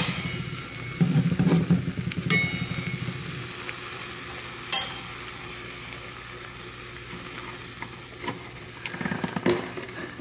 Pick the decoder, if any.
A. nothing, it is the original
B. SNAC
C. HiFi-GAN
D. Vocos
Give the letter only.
A